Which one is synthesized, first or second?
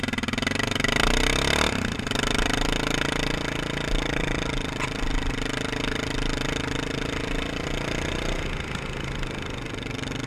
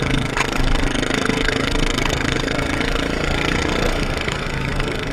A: second